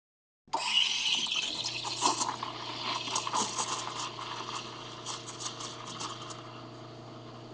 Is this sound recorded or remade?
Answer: recorded